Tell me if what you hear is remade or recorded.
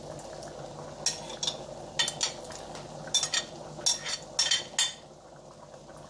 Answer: recorded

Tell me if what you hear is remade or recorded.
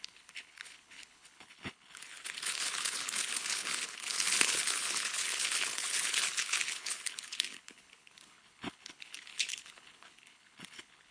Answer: remade